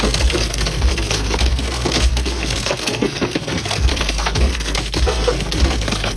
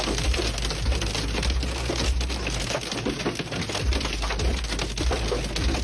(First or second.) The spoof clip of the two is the first